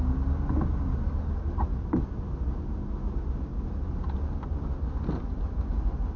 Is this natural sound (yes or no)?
yes